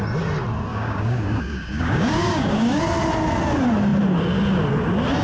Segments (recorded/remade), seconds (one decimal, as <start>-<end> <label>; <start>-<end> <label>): 0.0-0.7 recorded; 0.7-2.8 remade; 2.8-5.2 recorded

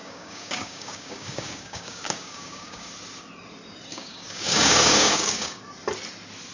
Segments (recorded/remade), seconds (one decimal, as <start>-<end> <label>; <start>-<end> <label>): 0.0-2.9 remade; 2.9-3.9 recorded; 3.9-5.6 remade; 5.6-6.5 recorded

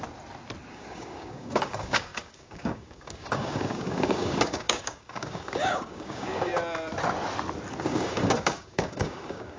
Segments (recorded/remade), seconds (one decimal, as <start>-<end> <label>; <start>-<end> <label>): 0.0-0.7 recorded; 0.7-6.5 remade; 6.5-7.8 recorded; 7.8-9.6 remade

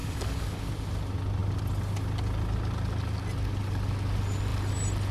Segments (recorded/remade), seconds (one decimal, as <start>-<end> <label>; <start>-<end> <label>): 0.0-0.7 remade; 0.7-5.1 recorded